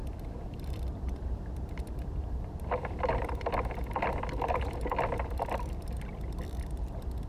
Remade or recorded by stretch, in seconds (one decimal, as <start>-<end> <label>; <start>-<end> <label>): 0.0-3.0 remade; 3.0-7.3 recorded